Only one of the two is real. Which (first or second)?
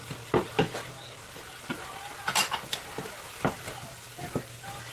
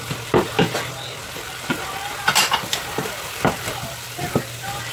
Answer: first